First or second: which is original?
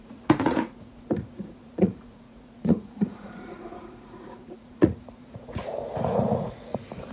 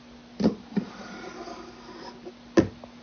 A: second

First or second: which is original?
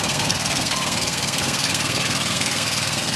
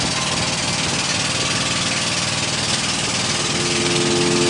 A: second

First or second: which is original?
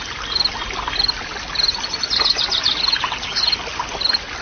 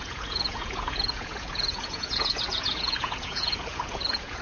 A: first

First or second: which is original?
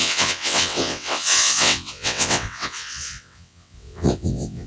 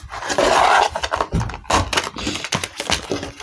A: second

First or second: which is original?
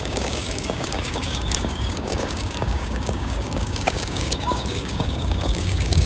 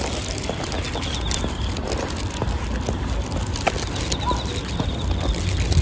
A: second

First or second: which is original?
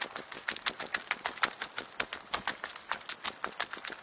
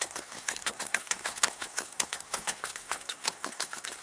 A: first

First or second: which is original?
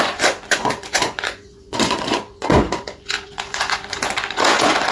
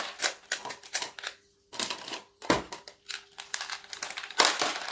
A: second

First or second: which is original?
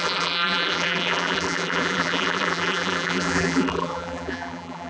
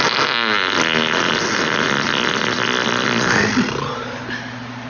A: second